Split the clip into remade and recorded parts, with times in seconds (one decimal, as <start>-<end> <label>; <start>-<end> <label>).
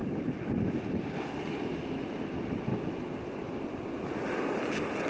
0.0-5.1 recorded